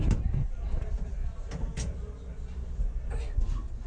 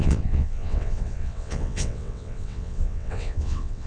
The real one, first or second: first